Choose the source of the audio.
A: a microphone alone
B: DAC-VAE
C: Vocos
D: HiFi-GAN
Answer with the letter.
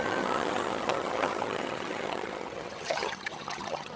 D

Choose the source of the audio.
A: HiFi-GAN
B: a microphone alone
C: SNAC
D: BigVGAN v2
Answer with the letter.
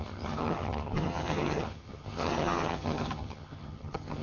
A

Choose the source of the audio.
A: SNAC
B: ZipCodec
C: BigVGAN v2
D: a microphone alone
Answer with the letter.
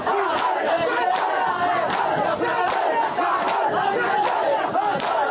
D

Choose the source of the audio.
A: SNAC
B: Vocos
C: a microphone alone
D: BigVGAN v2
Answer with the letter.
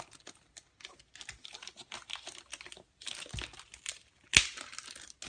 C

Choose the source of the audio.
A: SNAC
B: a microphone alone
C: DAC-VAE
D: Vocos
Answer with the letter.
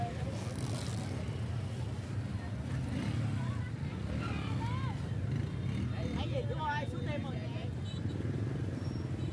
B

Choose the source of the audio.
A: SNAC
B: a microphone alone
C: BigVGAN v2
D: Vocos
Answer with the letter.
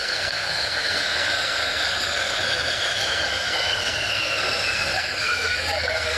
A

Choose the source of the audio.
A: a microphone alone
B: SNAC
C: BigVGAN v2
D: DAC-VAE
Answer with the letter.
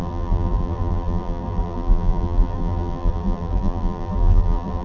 C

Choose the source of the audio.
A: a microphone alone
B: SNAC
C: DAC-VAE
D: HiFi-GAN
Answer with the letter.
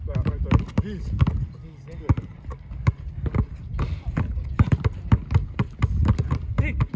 A